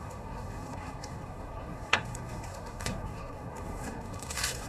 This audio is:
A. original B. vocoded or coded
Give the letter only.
B